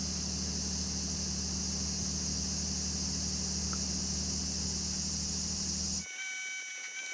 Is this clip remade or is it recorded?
recorded